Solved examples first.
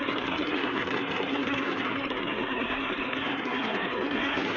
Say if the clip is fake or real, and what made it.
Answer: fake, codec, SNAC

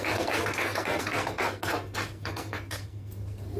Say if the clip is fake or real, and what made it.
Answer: fake, codec, SNAC